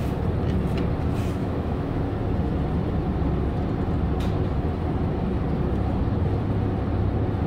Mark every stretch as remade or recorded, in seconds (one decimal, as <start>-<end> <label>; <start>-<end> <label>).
0.0-1.4 recorded; 1.4-2.0 remade; 2.0-7.5 recorded